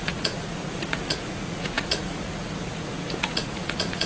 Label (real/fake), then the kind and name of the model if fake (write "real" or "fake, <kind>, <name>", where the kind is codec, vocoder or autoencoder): fake, vocoder, Vocos